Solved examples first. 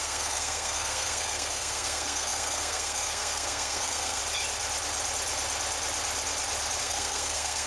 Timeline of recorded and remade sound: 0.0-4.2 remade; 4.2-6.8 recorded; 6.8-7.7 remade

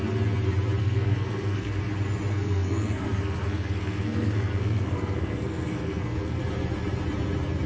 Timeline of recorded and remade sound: 0.0-0.8 recorded; 0.8-1.8 remade; 1.8-2.3 recorded; 2.3-6.4 remade; 6.4-7.7 recorded

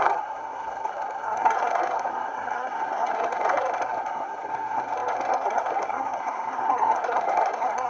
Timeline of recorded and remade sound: 0.0-7.9 remade

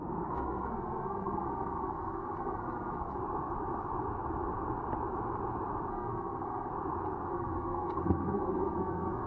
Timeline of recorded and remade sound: 0.0-3.2 remade; 3.2-5.9 recorded; 5.9-6.7 remade; 6.7-7.3 recorded; 7.3-9.3 remade

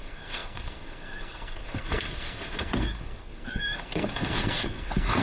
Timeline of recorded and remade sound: 0.0-5.2 remade

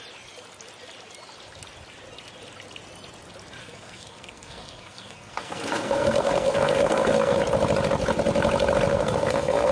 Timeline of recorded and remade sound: 0.0-3.6 recorded; 3.6-7.4 remade; 7.4-8.9 recorded; 8.9-9.7 remade

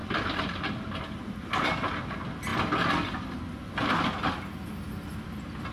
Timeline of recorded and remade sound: 0.0-5.7 recorded